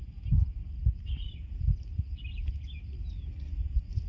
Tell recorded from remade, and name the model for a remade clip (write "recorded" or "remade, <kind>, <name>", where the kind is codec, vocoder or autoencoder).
recorded